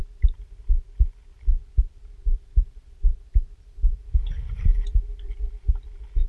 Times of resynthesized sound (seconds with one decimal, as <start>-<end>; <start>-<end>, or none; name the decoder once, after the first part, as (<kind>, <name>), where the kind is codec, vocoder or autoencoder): none